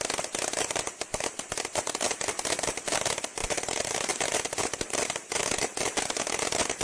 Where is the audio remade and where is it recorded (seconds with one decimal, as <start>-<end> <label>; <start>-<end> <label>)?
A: 0.0-3.4 recorded; 3.4-4.1 remade; 4.1-6.8 recorded